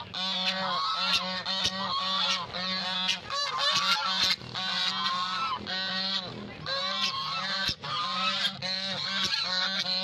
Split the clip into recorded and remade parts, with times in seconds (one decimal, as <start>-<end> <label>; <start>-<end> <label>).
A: 0.0-6.8 recorded; 6.8-8.6 remade; 8.6-10.0 recorded